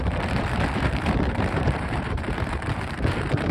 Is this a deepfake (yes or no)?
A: yes